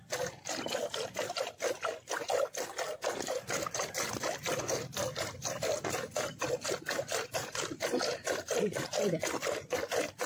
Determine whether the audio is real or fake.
fake